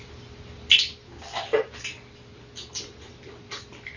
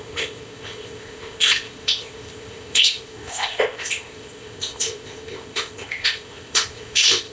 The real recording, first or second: first